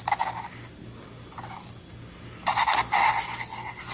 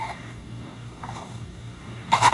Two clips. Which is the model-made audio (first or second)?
second